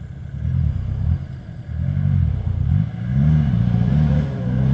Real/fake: real